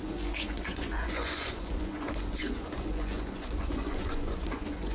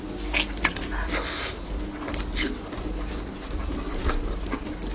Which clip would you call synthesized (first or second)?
first